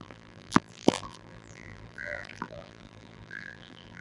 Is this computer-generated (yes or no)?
yes